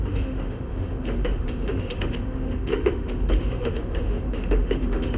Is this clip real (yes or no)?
no